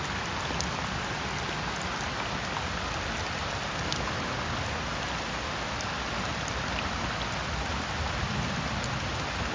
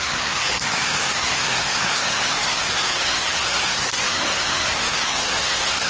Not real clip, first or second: second